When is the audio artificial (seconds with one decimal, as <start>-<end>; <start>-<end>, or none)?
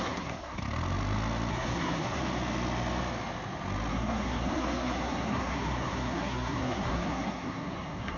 0.0-0.6; 1.5-2.2; 3.9-8.2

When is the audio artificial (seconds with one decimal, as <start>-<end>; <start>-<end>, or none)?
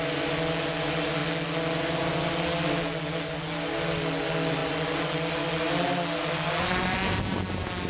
none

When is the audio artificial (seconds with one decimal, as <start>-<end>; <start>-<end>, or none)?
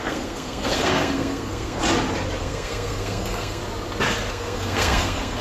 0.0-1.8; 2.4-3.6; 4.3-5.4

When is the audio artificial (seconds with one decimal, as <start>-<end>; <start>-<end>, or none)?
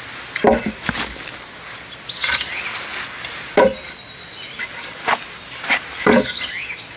none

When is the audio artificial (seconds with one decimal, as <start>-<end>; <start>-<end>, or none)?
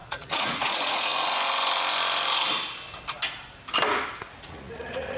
0.0-1.1; 4.2-5.2